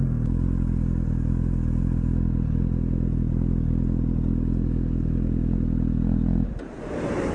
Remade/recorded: recorded